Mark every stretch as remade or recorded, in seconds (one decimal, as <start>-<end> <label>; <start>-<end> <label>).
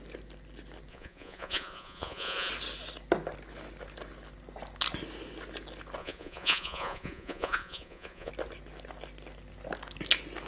0.0-0.9 recorded; 0.9-2.5 remade; 2.5-6.0 recorded; 6.0-8.3 remade; 8.3-10.5 recorded